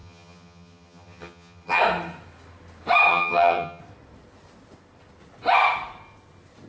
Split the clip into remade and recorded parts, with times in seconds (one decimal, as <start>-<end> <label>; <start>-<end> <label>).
0.0-1.8 remade; 1.8-3.1 recorded; 3.1-3.8 remade; 3.8-6.7 recorded